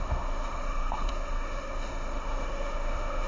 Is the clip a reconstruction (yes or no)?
yes